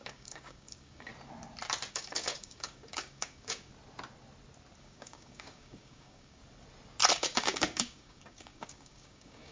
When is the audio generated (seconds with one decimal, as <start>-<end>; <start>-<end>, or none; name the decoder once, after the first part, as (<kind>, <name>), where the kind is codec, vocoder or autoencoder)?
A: 0.0-1.1 (codec, DAC); 1.9-3.7; 4.8-6.4; 7.1-9.5